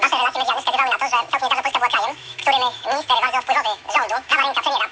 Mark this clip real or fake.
fake